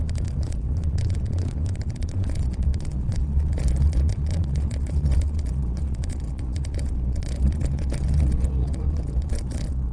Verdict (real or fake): fake